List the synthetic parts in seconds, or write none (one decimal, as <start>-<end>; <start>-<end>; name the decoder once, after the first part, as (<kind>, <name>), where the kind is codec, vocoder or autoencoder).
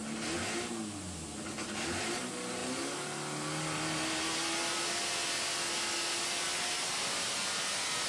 none